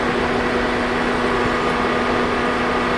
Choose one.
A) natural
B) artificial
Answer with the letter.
A